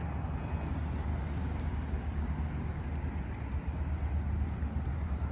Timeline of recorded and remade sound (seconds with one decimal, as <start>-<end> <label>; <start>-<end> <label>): 0.0-1.1 recorded; 1.1-2.8 remade; 2.8-5.3 recorded